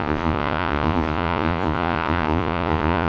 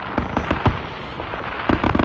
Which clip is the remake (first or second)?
first